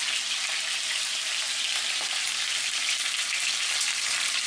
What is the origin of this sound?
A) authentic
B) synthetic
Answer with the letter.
A